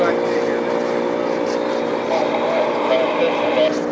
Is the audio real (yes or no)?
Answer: yes